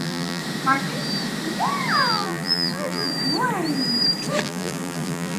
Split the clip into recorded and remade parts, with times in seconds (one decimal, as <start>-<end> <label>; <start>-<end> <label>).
0.0-0.4 remade; 0.4-2.1 recorded; 2.1-3.1 remade; 3.1-4.4 recorded; 4.4-5.4 remade